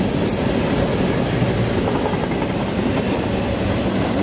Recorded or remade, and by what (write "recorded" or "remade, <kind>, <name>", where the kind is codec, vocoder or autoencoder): recorded